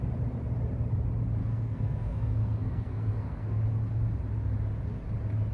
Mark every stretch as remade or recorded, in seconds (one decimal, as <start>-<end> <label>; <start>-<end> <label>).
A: 0.0-1.4 recorded; 1.4-3.6 remade; 3.6-5.5 recorded